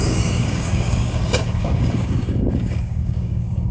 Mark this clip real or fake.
fake